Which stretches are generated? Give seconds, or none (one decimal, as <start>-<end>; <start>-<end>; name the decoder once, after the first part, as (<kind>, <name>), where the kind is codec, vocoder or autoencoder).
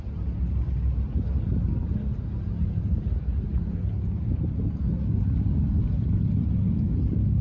none